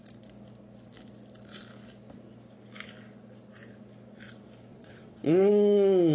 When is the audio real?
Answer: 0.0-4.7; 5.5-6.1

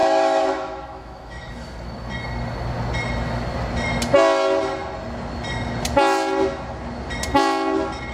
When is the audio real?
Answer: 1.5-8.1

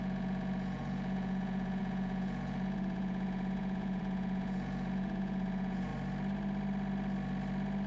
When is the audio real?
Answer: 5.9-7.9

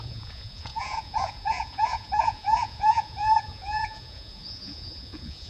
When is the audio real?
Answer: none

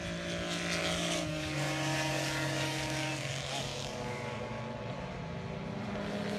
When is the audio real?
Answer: 0.0-0.8; 4.6-6.4

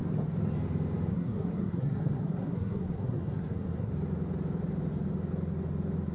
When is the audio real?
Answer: 0.0-1.1; 3.9-6.1